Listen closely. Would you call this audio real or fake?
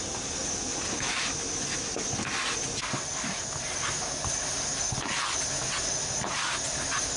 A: real